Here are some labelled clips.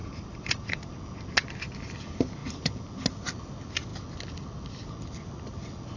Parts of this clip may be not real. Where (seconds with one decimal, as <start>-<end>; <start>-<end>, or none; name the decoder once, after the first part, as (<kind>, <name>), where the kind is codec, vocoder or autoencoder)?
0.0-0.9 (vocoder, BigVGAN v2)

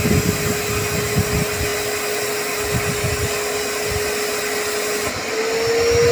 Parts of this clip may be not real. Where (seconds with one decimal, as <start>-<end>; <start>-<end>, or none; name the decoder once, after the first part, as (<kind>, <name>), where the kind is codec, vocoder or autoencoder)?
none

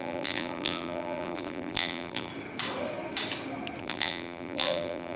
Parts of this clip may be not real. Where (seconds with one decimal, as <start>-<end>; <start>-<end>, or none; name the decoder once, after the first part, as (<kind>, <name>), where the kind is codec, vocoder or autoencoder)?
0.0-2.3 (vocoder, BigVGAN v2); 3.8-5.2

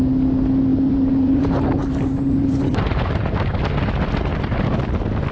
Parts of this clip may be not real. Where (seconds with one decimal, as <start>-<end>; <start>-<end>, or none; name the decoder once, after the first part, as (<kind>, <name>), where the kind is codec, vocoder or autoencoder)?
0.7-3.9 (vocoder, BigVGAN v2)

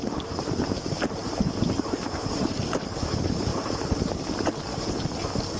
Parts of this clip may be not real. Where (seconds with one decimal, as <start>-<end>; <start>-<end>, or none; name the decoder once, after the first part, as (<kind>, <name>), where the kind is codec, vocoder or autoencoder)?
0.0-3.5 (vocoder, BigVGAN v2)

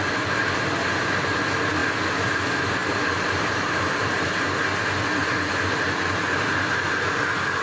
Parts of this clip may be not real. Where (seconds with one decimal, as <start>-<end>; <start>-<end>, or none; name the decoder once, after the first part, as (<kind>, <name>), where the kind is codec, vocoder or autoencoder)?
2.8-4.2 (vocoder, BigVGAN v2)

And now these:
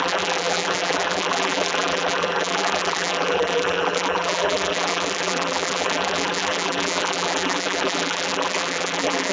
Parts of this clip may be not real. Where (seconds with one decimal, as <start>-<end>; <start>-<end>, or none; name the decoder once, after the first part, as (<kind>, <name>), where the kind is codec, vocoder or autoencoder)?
0.0-9.3 (vocoder, BigVGAN v2)

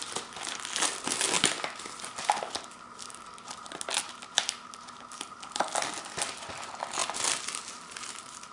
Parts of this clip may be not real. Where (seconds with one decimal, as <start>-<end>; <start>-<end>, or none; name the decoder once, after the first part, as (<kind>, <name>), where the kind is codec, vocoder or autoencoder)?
none